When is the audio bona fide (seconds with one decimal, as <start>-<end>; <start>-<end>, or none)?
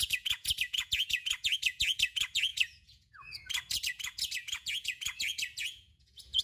none